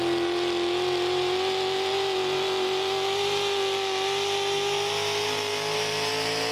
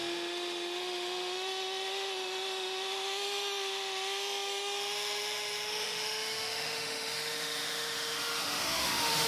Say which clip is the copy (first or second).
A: second